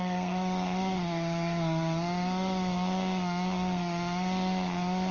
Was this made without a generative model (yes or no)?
no